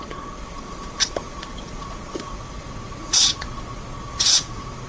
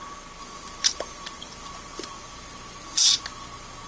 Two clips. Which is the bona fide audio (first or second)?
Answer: second